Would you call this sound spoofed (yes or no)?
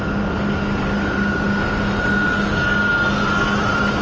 no